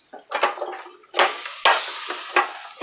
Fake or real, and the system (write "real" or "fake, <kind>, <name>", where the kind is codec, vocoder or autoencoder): real